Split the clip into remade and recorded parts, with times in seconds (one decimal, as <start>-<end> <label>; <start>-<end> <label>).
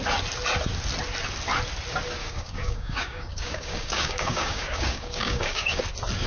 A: 0.0-2.2 recorded; 2.2-5.8 remade; 5.8-6.3 recorded